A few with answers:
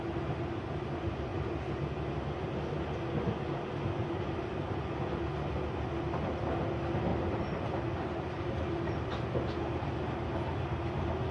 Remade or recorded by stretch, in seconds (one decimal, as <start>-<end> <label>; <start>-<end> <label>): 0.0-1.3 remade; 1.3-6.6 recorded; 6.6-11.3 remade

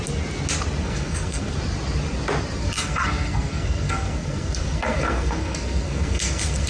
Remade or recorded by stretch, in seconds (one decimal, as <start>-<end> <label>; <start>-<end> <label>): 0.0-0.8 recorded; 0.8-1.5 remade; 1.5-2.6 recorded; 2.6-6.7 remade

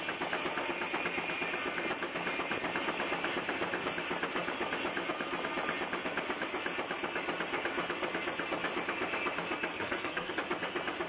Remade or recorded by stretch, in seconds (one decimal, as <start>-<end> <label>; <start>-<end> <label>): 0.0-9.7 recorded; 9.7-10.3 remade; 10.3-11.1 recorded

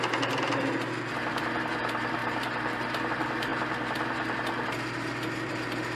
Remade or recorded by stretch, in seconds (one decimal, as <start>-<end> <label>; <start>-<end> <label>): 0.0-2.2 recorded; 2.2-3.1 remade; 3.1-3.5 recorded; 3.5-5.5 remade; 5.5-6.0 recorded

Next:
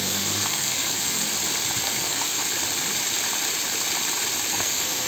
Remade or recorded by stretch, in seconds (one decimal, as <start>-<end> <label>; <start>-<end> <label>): 0.0-1.3 remade; 1.3-1.8 recorded; 1.8-2.4 remade; 2.4-4.5 recorded; 4.5-5.1 remade

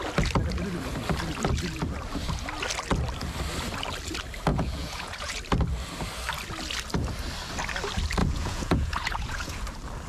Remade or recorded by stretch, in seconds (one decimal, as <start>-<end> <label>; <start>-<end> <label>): 0.0-4.5 recorded; 4.5-5.3 remade; 5.3-8.2 recorded; 8.2-9.6 remade; 9.6-10.1 recorded